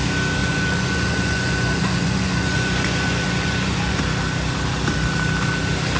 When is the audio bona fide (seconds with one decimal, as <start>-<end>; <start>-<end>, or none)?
0.0-0.4; 4.0-6.0